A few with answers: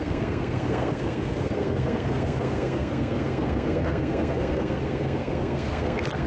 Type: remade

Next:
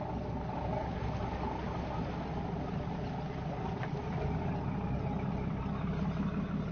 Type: recorded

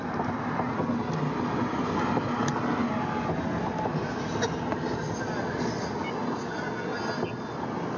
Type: recorded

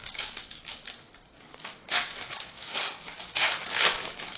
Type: remade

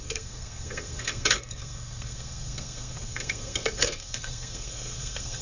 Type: remade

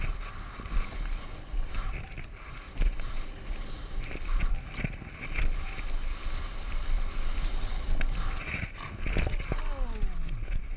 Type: recorded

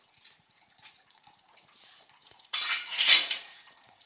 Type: remade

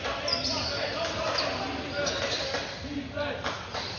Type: recorded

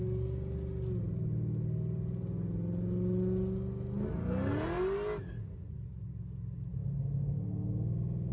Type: recorded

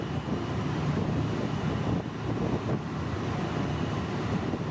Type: recorded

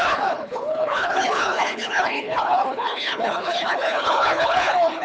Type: remade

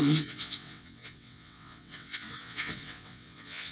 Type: remade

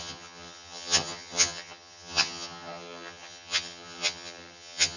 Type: remade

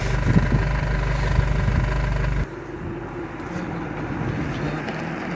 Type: recorded